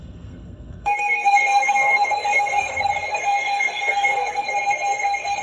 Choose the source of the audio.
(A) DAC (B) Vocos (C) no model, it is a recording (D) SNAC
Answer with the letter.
D